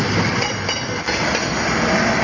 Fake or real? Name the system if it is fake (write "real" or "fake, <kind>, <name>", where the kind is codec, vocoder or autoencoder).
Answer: real